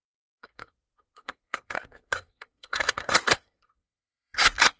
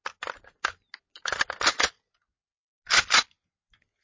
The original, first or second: second